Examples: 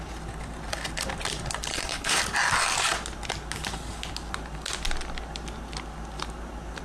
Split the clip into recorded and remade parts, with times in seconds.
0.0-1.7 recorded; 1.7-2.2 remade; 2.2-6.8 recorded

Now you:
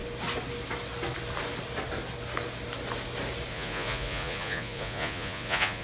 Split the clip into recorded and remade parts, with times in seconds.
0.0-3.5 recorded; 3.5-5.8 remade

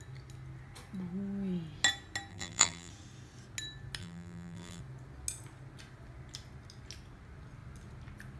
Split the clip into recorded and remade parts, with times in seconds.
0.0-2.3 recorded; 2.3-2.9 remade; 2.9-4.0 recorded; 4.0-4.8 remade; 4.8-8.4 recorded

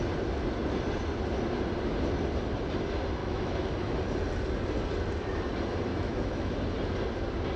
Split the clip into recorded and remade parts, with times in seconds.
0.0-3.2 recorded; 3.2-4.0 remade; 4.0-5.9 recorded; 5.9-6.5 remade; 6.5-7.6 recorded

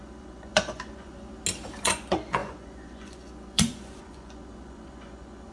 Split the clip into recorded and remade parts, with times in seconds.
0.0-1.3 remade; 1.3-1.8 recorded; 1.8-5.5 remade

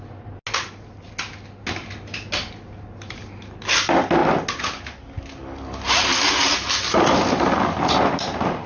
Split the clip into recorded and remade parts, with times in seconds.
0.0-8.7 recorded

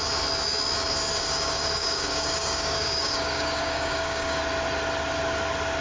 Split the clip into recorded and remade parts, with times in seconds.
0.0-1.1 recorded; 1.1-4.4 remade; 4.4-5.8 recorded

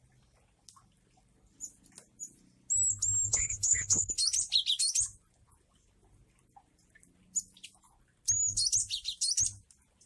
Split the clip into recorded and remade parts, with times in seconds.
0.0-3.3 recorded; 3.3-4.1 remade; 4.1-10.1 recorded